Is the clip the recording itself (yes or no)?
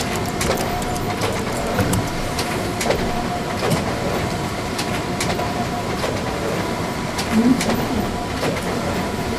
no